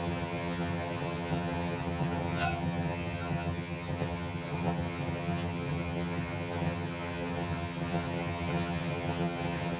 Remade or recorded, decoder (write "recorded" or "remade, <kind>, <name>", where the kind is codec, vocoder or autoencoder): remade, vocoder, HiFi-GAN